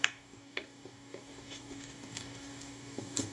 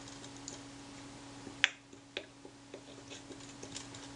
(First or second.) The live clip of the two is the second